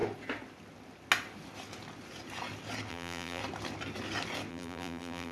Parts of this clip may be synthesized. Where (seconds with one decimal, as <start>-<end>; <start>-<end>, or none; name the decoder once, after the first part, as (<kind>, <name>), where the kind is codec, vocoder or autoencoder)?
2.9-3.4 (vocoder, BigVGAN v2); 4.5-5.3